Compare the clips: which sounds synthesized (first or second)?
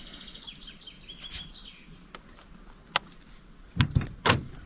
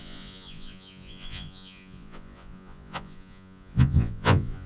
second